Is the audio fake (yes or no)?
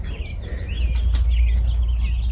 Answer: no